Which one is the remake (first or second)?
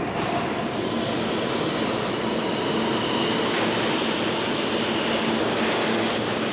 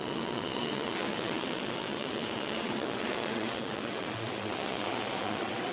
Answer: second